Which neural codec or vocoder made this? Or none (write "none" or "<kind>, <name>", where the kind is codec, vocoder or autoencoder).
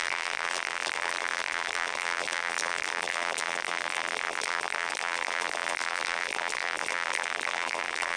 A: vocoder, BigVGAN v2